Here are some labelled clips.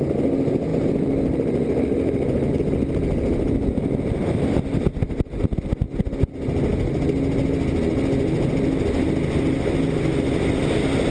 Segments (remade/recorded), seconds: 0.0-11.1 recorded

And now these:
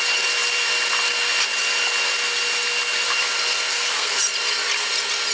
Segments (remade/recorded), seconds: 0.0-3.7 recorded; 3.7-4.2 remade; 4.2-5.3 recorded